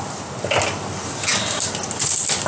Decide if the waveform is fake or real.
real